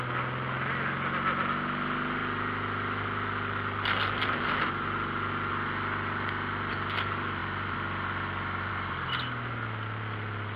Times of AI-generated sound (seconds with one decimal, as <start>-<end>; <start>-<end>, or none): none